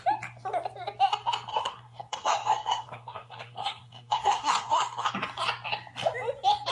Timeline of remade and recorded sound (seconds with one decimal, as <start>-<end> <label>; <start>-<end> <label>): 0.0-1.5 recorded; 1.5-5.1 remade; 5.1-6.7 recorded